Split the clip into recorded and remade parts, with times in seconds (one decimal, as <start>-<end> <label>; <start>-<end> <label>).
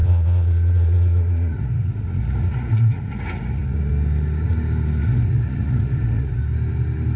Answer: 0.0-3.9 remade; 3.9-5.0 recorded; 5.0-6.4 remade; 6.4-7.2 recorded